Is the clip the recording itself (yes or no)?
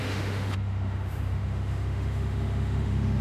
no